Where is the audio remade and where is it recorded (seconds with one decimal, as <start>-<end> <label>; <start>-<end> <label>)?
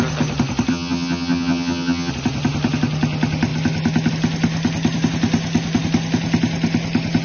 0.0-0.7 recorded; 0.7-2.1 remade; 2.1-7.2 recorded